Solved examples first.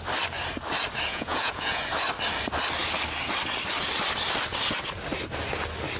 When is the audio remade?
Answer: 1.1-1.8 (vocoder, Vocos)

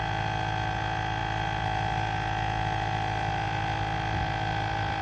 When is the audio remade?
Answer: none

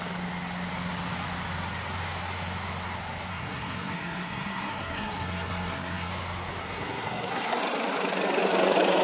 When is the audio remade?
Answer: 3.3-6.1 (codec, SNAC); 6.6-7.6

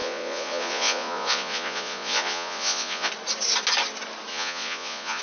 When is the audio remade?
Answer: 0.0-3.1 (vocoder, Vocos); 4.3-5.2

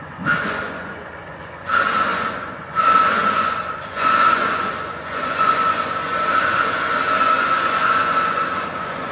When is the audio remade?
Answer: 0.0-9.1 (vocoder, Vocos)